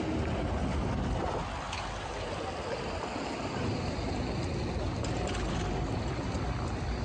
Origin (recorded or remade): recorded